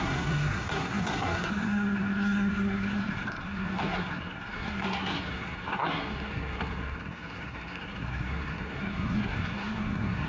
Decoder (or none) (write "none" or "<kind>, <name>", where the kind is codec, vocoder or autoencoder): codec, SNAC